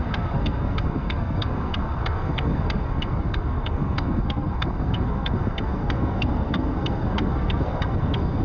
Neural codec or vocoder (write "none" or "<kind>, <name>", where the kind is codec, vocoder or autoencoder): codec, SNAC